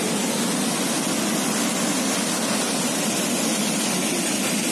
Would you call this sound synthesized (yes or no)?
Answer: no